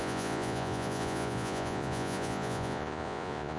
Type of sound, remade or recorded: remade